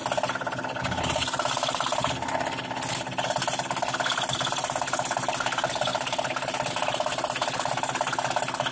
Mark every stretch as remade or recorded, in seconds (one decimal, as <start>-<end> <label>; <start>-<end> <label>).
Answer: 0.0-8.7 recorded